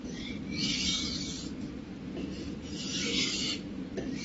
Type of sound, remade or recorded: recorded